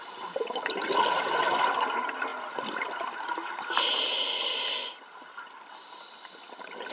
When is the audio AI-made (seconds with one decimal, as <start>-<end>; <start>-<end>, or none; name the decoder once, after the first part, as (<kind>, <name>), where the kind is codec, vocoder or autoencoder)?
none

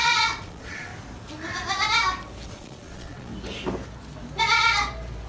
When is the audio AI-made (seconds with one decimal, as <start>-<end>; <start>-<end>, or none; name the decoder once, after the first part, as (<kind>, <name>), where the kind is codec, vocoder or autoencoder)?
0.0-0.9 (vocoder, Vocos); 2.5-3.3

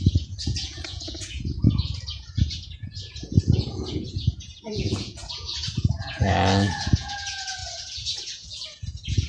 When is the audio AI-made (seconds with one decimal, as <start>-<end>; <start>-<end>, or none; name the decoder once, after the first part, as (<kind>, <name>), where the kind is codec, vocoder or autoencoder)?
0.0-9.3 (vocoder, Vocos)

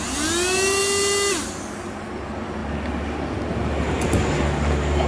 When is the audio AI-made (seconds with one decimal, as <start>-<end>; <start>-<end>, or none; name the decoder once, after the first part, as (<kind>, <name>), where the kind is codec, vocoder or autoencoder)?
none

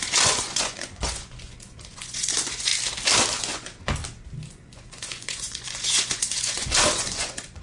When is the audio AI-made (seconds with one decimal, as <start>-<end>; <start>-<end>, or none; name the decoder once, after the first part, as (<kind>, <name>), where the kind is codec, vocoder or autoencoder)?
0.0-2.7 (vocoder, Vocos); 3.4-4.0; 4.5-7.6

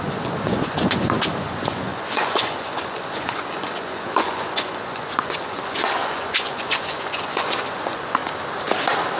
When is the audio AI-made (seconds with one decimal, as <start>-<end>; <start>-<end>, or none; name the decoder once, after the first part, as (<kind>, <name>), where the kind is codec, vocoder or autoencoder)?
0.0-8.2 (vocoder, Vocos)